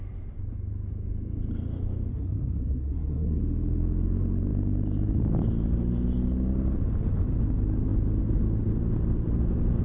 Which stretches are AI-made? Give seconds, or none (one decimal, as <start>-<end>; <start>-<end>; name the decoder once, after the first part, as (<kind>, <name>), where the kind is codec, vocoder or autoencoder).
2.1-3.4 (codec, SNAC)

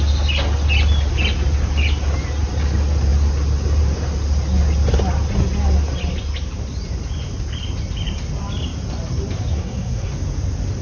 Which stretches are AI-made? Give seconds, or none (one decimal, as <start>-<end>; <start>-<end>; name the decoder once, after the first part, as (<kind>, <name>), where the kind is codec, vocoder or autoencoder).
9.5-10.1 (codec, SNAC)

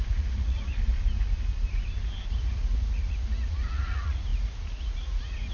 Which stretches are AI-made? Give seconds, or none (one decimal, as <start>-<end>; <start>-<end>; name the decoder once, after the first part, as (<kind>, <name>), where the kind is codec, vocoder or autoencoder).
0.0-0.7 (vocoder, Vocos); 2.3-5.5

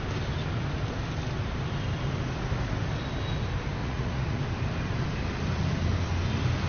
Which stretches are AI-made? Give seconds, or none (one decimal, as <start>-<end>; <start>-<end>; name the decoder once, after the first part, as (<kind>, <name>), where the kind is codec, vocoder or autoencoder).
3.8-4.4 (vocoder, Vocos)

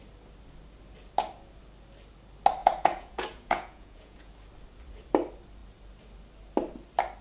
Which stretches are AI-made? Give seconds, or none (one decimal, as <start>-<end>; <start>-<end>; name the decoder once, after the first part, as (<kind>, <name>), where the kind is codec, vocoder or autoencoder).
2.6-4.3 (vocoder, Vocos)

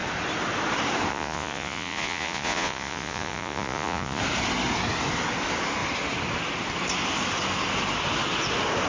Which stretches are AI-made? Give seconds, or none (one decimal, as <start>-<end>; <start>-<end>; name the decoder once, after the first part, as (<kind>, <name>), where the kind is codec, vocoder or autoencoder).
1.1-4.2 (vocoder, Vocos)

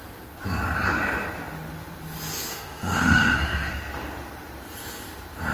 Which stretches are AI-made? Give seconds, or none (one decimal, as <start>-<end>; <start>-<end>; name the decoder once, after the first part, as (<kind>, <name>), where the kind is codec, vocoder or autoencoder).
2.5-3.7 (autoencoder, DAC-VAE)

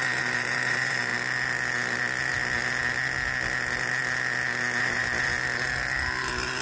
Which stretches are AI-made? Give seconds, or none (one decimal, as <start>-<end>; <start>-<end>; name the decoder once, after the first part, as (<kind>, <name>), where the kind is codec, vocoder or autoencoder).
0.0-1.1 (vocoder, BigVGAN v2); 4.8-5.3